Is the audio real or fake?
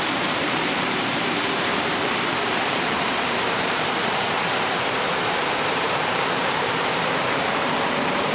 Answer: fake